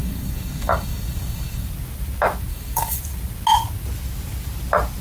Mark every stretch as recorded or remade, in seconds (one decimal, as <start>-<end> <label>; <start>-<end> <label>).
0.0-1.7 remade; 1.7-2.5 recorded; 2.5-3.0 remade; 3.0-5.0 recorded